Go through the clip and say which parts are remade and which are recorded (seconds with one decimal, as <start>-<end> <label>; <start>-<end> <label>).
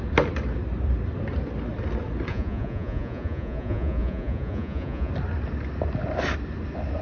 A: 0.0-2.3 recorded; 2.3-5.1 remade; 5.1-7.0 recorded